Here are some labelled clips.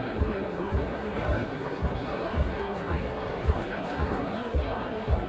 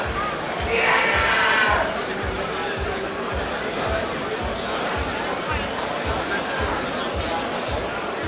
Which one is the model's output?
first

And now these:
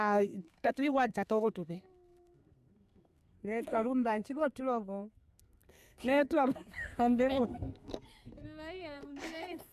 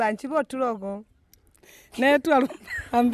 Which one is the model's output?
first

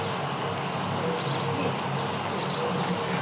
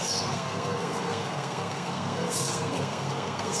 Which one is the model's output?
second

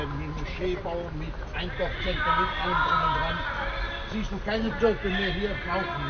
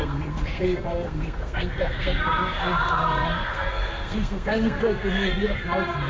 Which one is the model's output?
second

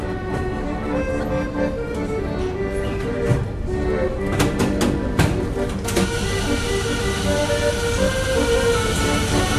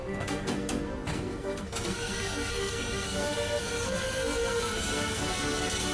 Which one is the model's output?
second